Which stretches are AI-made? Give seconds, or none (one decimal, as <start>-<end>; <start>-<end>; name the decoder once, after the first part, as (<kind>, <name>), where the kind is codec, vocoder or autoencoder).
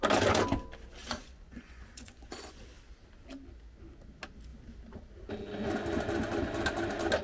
1.0-2.6 (vocoder, Vocos)